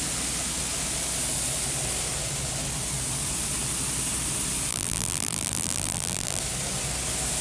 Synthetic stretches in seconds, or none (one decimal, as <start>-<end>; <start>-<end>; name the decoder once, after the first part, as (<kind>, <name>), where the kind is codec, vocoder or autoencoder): 4.7-6.4 (vocoder, BigVGAN v2)